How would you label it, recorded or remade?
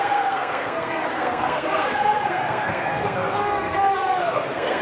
remade